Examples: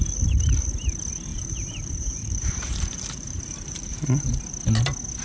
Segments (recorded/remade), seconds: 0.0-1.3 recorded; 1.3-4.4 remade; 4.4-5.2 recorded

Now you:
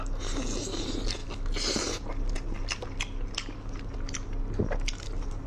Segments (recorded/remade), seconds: 0.0-5.5 recorded